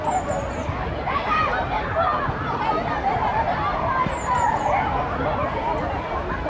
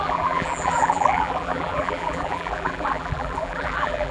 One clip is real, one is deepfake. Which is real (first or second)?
first